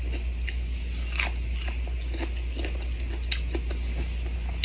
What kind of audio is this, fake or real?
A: real